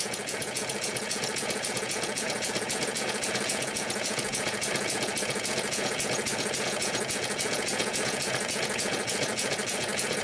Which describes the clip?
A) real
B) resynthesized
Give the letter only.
B